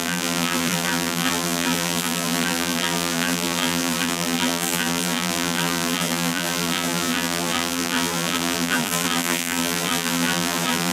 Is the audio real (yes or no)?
no